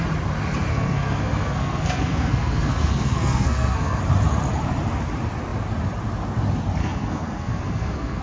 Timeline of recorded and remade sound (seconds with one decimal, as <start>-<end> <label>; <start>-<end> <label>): 0.0-0.7 recorded; 0.7-4.0 remade; 4.0-6.8 recorded; 6.8-8.2 remade